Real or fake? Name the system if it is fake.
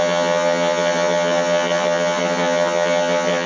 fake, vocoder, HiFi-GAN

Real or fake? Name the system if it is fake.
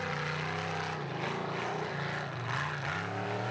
real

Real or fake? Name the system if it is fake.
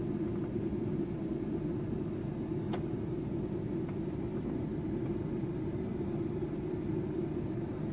real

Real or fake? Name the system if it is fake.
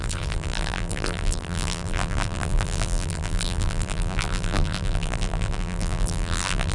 fake, vocoder, BigVGAN v2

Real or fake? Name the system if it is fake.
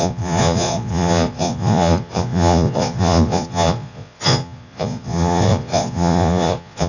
fake, vocoder, Vocos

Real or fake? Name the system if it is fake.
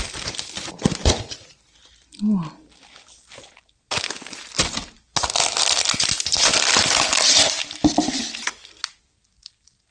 real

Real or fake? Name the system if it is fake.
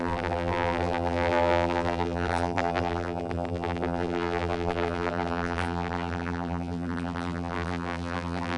fake, vocoder, BigVGAN v2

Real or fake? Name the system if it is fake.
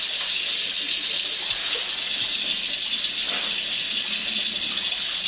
real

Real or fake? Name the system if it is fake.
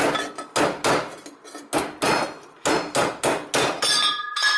real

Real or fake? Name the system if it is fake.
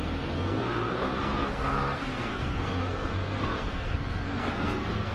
fake, codec, SNAC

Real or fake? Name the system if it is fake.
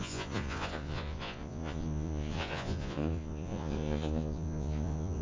fake, vocoder, Vocos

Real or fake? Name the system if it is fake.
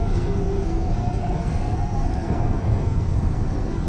fake, codec, SNAC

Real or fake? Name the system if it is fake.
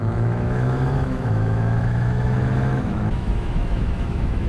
fake, autoencoder, DAC-VAE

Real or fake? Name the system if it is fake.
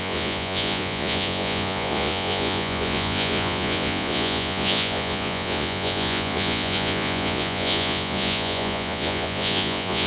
fake, vocoder, Vocos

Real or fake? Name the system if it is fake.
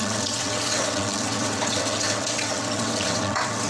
fake, vocoder, WaveNeXt